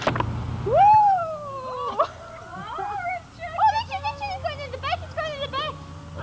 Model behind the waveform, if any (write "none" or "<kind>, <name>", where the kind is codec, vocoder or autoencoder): none